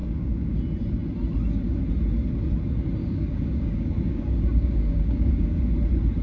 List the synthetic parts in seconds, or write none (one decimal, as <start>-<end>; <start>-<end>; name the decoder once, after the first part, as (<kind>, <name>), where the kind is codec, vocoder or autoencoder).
0.0-0.6 (codec, DAC); 3.0-5.6